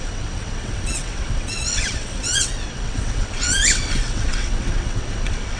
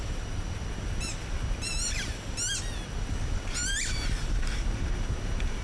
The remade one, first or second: first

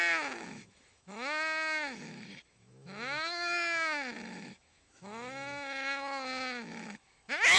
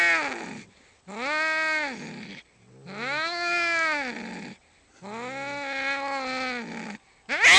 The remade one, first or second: first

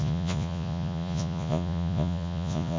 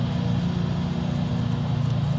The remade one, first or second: first